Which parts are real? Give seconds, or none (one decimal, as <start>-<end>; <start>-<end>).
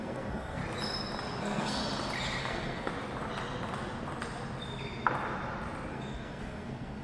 0.6-1.4; 1.8-2.4; 2.9-5.9